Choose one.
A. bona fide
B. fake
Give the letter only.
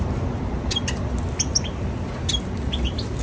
A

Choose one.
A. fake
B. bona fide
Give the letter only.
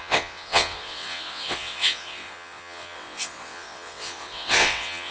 A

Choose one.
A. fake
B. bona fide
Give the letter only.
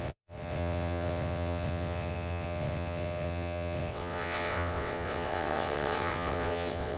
A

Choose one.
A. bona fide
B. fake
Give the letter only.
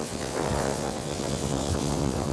B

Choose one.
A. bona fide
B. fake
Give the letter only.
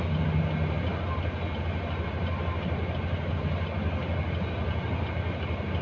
A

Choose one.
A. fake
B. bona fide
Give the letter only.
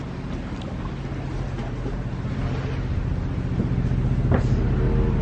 B